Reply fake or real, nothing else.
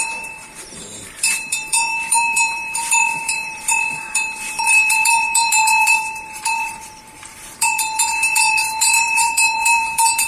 fake